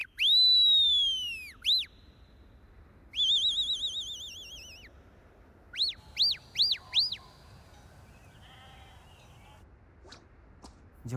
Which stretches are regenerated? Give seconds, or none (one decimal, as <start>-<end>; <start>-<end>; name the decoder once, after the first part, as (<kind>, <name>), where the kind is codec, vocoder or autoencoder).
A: none